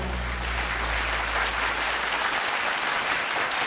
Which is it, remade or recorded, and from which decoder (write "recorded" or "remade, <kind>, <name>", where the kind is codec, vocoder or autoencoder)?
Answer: recorded